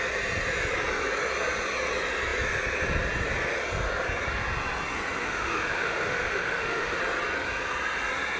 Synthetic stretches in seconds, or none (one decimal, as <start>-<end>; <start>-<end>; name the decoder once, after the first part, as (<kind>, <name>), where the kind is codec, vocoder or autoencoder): 5.2-7.0 (autoencoder, DAC-VAE)